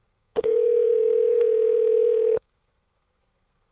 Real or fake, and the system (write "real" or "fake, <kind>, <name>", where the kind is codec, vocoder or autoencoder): fake, codec, SNAC